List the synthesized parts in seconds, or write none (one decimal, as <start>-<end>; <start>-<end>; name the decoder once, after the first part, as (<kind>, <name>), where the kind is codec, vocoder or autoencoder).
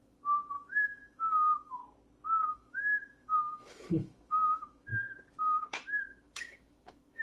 0.0-1.8 (autoencoder, DAC-VAE); 2.5-4.9; 5.4-7.2